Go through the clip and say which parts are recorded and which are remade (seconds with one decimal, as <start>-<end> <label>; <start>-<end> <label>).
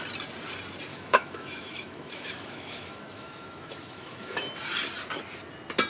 0.0-0.9 recorded; 0.9-4.4 remade; 4.4-5.9 recorded